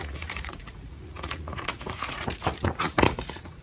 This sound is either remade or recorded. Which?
remade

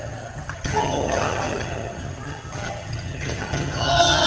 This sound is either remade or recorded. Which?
remade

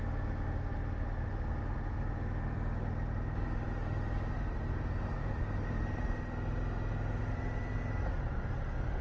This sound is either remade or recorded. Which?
recorded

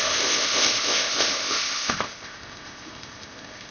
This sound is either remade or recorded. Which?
remade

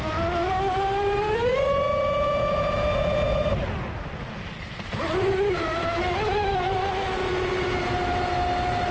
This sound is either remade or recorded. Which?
recorded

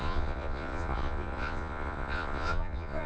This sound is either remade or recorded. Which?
remade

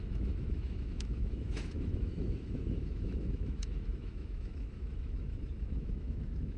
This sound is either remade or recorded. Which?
remade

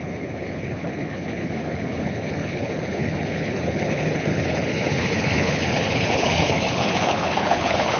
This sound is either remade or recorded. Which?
remade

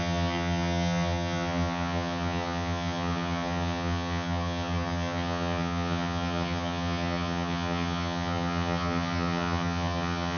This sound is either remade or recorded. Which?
remade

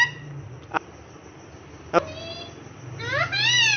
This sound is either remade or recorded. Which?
recorded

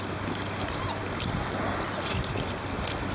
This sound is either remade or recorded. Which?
recorded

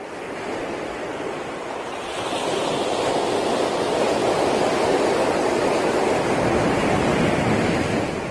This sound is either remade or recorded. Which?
recorded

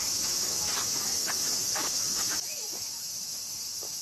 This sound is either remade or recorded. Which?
remade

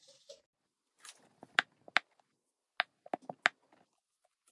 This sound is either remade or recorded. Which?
recorded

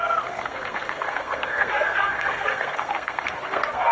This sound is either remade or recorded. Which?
remade